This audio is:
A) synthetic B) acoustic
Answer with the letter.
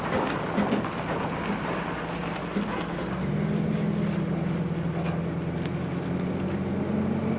B